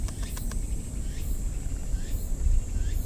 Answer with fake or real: real